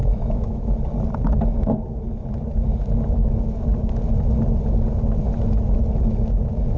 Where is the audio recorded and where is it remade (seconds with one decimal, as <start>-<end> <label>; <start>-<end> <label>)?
0.0-0.7 remade; 0.7-6.8 recorded